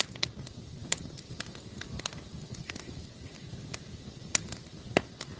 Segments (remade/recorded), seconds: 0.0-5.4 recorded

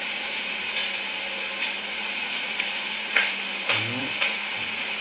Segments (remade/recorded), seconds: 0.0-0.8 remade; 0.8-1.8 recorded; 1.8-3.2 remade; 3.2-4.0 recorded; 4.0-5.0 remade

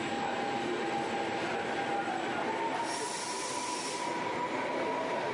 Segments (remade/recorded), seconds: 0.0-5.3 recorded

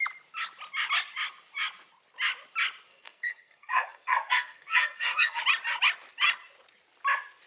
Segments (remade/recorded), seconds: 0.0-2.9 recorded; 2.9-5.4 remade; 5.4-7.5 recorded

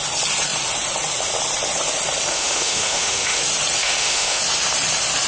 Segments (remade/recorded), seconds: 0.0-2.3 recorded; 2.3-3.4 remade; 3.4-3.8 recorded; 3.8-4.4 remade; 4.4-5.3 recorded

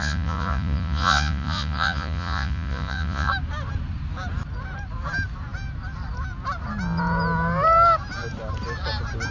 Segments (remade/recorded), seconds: 0.0-3.3 remade; 3.3-9.3 recorded